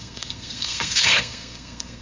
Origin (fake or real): fake